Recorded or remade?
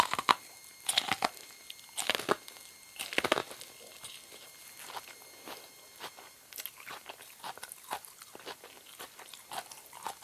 recorded